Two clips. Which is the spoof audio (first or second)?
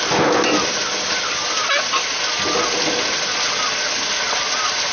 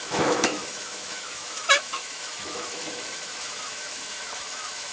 second